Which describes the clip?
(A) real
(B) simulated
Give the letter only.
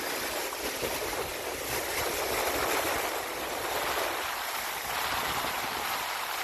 A